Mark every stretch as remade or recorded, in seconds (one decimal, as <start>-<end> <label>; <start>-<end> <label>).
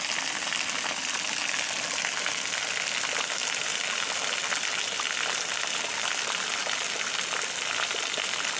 0.0-8.6 recorded